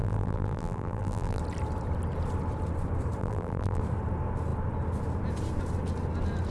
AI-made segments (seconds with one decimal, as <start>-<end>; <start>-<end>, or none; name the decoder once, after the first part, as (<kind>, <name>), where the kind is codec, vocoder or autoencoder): 0.0-1.4 (vocoder, BigVGAN v2); 3.2-3.8